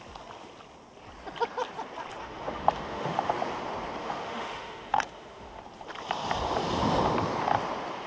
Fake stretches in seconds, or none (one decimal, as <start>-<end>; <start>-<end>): 2.2-3.3; 4.0-5.6